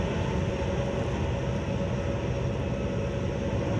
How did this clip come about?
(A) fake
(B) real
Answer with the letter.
B